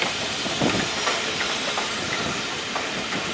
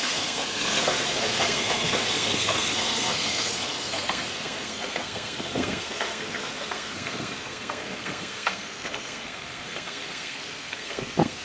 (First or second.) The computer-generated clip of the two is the second